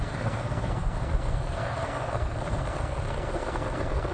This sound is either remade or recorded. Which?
remade